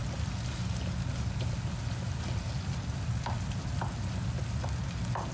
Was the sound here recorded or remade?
recorded